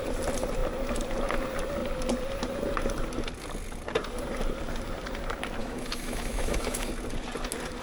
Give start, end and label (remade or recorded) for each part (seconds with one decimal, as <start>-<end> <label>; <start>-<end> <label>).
0.0-5.6 recorded; 5.6-6.9 remade; 6.9-7.8 recorded